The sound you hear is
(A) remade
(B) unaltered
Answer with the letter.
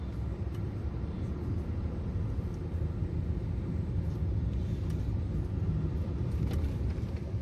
B